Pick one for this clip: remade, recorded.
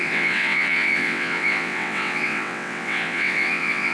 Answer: remade